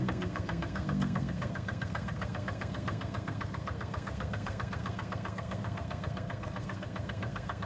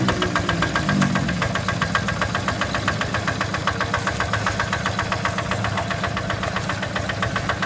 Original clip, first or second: second